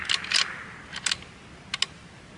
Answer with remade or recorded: recorded